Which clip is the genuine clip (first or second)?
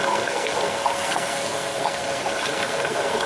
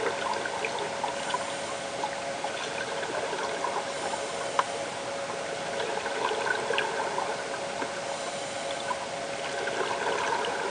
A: second